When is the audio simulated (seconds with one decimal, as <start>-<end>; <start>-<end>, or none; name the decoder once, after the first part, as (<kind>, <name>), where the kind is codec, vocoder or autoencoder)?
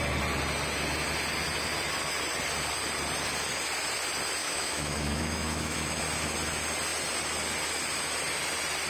4.4-6.0 (autoencoder, DAC-VAE)